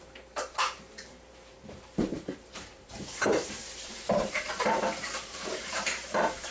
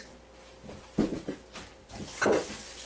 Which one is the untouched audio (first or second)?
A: second